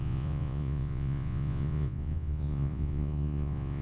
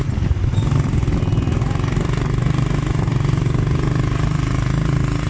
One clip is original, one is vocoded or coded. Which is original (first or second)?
second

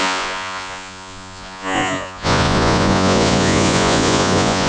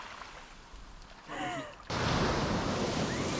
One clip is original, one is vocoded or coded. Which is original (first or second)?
second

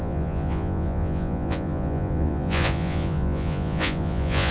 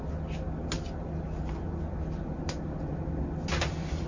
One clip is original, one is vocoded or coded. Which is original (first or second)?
second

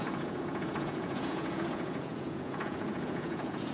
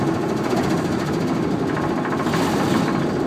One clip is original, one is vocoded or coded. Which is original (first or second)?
second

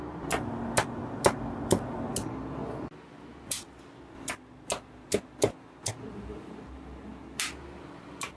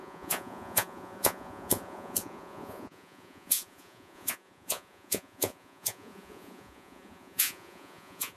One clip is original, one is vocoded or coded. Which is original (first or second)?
first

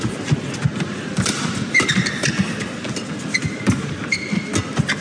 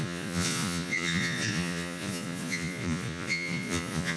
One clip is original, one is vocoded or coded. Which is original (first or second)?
first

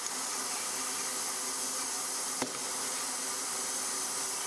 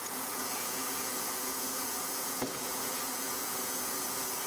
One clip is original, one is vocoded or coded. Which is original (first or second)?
first